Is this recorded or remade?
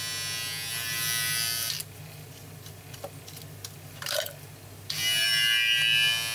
recorded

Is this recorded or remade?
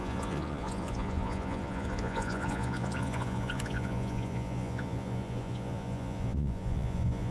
remade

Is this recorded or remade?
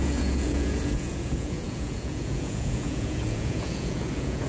remade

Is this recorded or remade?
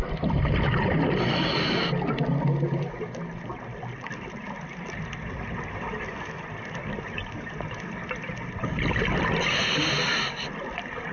recorded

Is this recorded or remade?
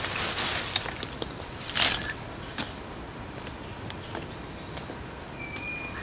recorded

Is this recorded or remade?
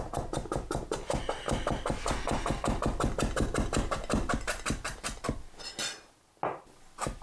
recorded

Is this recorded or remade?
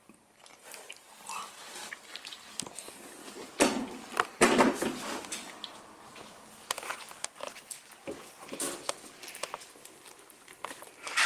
recorded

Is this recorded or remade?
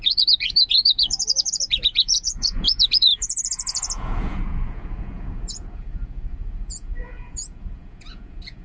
remade